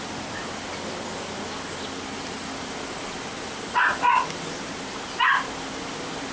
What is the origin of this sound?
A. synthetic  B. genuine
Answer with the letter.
B